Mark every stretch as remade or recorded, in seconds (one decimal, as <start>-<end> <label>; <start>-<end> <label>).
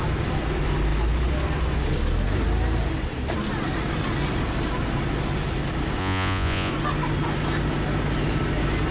0.0-6.0 recorded; 6.0-6.7 remade; 6.7-8.9 recorded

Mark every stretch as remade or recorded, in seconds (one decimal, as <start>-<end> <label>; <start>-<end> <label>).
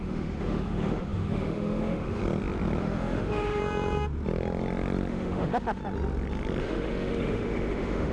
0.0-2.2 remade; 2.2-2.8 recorded; 2.8-3.6 remade; 3.6-5.1 recorded; 5.1-5.8 remade; 5.8-6.6 recorded; 6.6-8.1 remade